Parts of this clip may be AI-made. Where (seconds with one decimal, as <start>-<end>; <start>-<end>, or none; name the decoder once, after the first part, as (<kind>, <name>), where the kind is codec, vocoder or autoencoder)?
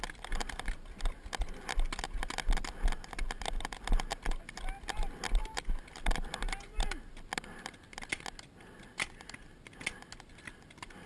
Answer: none